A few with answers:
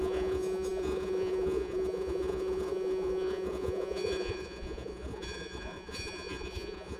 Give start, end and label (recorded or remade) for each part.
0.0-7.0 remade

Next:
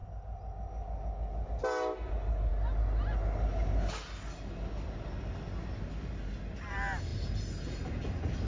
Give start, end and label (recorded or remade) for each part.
0.0-8.5 recorded

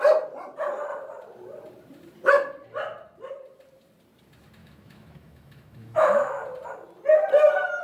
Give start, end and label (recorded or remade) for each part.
0.0-4.6 recorded; 4.6-6.4 remade; 6.4-7.8 recorded

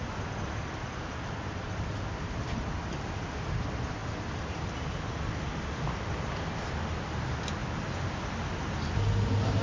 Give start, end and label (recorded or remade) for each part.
0.0-9.6 recorded

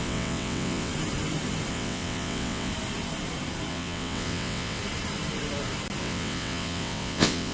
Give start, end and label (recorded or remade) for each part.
0.0-0.9 remade; 0.9-1.7 recorded; 1.7-2.7 remade; 2.7-3.7 recorded; 3.7-4.8 remade; 4.8-6.0 recorded; 6.0-7.5 remade

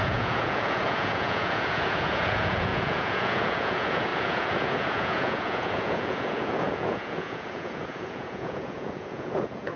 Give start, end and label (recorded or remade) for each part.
0.0-9.8 remade

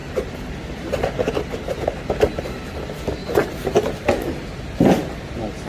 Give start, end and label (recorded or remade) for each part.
0.0-1.4 remade; 1.4-3.2 recorded; 3.2-5.7 remade